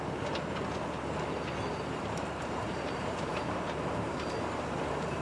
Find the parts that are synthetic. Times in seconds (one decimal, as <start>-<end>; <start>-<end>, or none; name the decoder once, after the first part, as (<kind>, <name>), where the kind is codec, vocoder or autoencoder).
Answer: 1.7-4.8 (vocoder, BigVGAN v2)